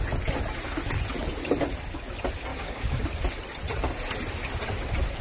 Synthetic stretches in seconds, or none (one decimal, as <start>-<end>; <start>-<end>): 2.5-3.1